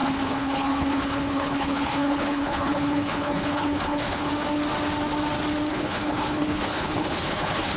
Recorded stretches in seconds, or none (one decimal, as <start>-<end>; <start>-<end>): 4.3-5.7